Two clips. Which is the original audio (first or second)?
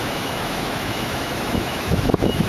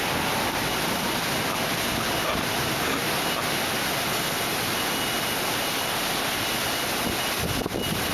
second